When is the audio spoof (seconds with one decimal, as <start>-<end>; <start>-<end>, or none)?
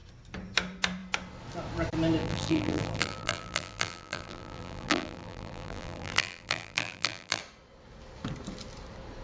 2.2-7.4